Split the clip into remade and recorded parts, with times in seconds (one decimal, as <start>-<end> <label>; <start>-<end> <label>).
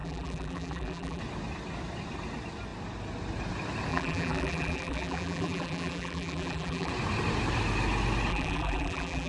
0.0-1.2 remade; 1.2-3.9 recorded; 3.9-6.9 remade; 6.9-8.3 recorded; 8.3-9.3 remade